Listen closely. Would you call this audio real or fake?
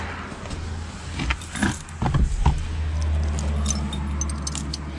real